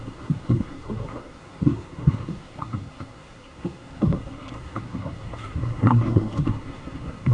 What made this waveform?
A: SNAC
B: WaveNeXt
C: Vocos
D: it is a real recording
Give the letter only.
A